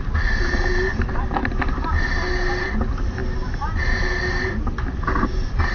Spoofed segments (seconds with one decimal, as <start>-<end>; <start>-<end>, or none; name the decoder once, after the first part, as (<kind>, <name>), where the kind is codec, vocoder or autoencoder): none